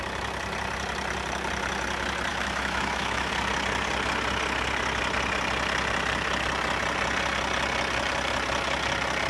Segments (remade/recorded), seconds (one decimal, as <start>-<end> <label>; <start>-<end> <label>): 0.0-2.3 recorded; 2.3-3.3 remade; 3.3-9.3 recorded